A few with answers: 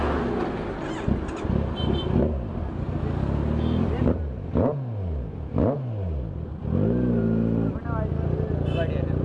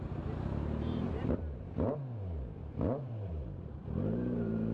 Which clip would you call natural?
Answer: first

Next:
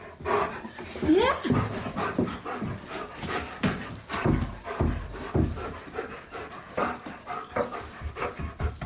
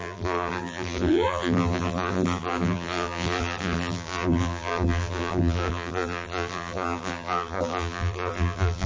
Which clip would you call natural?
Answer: first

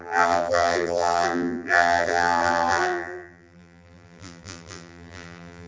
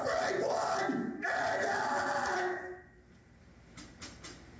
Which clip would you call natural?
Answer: second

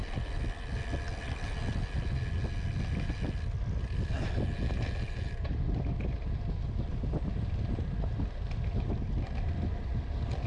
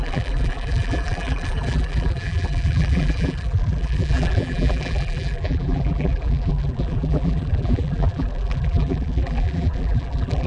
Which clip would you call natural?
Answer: first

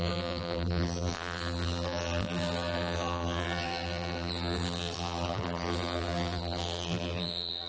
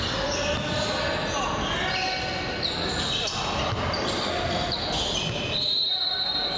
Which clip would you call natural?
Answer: second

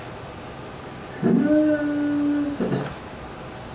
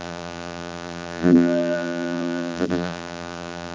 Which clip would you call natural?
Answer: first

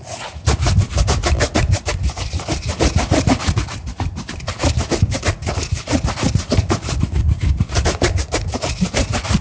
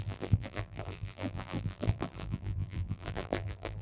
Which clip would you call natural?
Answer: first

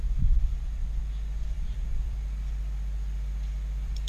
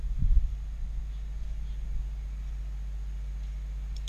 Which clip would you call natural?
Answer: second